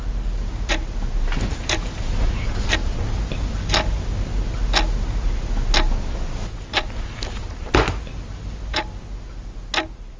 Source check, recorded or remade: recorded